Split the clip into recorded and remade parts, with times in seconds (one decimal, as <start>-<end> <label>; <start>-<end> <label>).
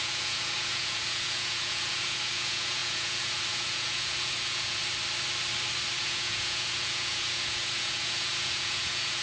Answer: 0.0-4.8 remade; 4.8-6.0 recorded; 6.0-9.2 remade